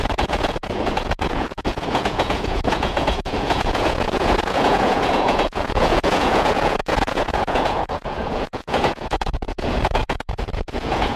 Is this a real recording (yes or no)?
no